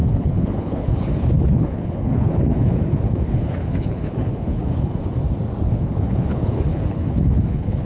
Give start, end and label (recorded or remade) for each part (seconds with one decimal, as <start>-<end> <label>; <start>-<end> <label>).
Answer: 0.0-5.2 remade; 5.2-5.7 recorded; 5.7-7.9 remade